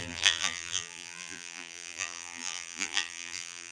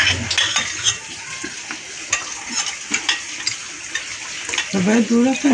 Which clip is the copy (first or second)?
first